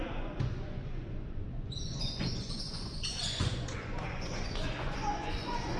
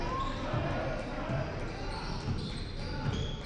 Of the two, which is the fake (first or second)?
first